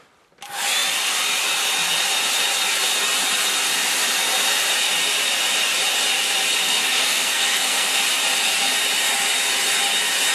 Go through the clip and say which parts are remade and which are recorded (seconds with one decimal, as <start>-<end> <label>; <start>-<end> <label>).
0.0-6.6 recorded; 6.6-8.0 remade; 8.0-10.3 recorded